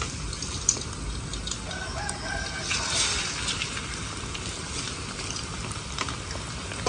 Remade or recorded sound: recorded